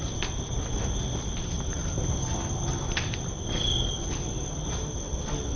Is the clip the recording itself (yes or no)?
yes